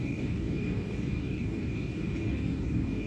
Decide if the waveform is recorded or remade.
remade